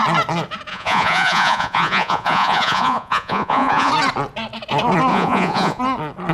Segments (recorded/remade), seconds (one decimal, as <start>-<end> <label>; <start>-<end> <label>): 0.0-0.7 recorded; 0.7-3.9 remade; 3.9-5.1 recorded; 5.1-5.8 remade; 5.8-6.3 recorded